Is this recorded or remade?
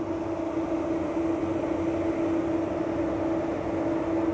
recorded